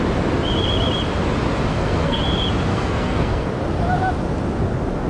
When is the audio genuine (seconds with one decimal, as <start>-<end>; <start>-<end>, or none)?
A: 0.0-1.7; 2.2-2.7; 3.5-5.1